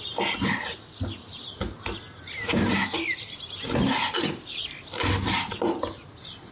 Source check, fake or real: real